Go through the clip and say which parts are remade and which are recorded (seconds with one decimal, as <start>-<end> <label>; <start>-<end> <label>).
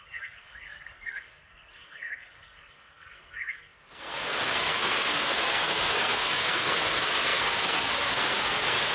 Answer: 0.0-8.9 remade